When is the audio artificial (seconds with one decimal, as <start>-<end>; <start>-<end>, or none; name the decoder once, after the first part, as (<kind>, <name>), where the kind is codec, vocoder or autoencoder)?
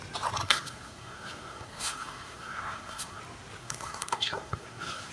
0.4-3.2 (codec, SNAC); 3.6-5.1